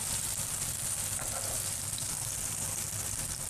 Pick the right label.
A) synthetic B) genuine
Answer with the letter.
A